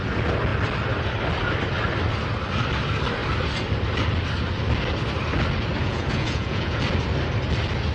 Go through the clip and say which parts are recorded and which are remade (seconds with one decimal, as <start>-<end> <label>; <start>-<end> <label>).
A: 0.0-5.8 recorded; 5.8-6.8 remade; 6.8-7.9 recorded